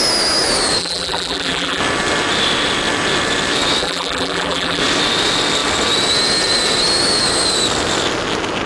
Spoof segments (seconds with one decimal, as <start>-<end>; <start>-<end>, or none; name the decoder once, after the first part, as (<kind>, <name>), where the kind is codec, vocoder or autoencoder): 0.8-1.8 (vocoder, BigVGAN v2); 3.8-4.8